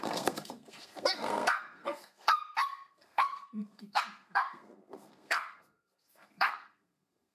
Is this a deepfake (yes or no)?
yes